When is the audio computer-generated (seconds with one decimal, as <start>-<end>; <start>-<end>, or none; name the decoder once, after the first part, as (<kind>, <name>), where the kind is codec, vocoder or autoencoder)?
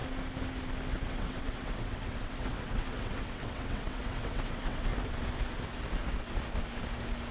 1.0-4.9 (vocoder, WaveNeXt)